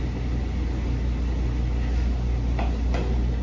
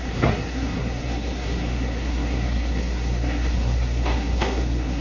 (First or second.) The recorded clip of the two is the first